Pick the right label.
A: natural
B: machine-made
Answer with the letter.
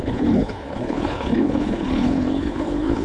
B